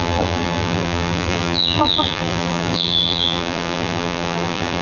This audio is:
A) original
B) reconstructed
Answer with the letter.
B